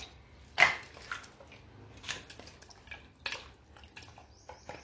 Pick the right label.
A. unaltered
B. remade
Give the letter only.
A